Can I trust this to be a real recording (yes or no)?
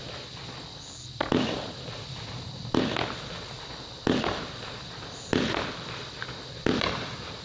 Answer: yes